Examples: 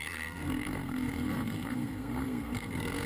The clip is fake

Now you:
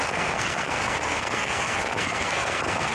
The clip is fake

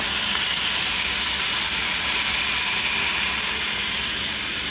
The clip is real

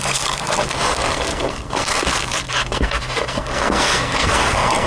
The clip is fake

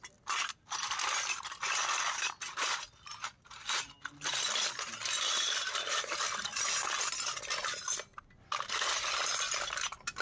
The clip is real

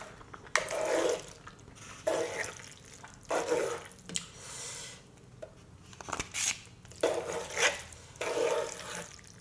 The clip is real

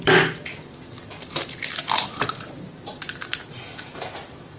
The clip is real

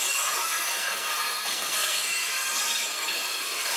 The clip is fake